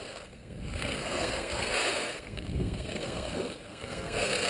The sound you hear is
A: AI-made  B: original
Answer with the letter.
A